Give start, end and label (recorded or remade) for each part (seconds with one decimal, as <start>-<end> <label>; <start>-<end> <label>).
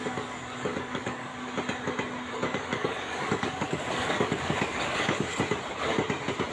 0.0-1.3 remade; 1.3-2.3 recorded; 2.3-5.3 remade; 5.3-6.5 recorded